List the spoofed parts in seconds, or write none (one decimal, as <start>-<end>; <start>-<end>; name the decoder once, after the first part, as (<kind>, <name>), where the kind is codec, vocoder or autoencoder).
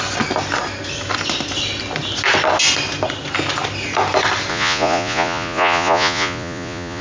4.5-7.0 (vocoder, Vocos)